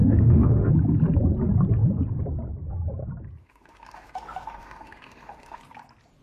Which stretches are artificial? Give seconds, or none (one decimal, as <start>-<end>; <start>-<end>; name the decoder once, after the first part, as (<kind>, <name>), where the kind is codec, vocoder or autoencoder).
0.0-0.7 (autoencoder, DAC-VAE); 3.4-5.6